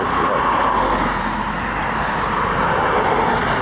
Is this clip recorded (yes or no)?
yes